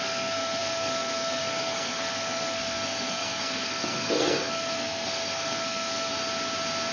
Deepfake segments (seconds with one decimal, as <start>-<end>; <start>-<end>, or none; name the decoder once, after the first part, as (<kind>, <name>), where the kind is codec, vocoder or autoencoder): 0.0-6.1 (codec, SNAC)